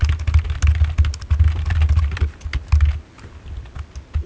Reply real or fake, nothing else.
real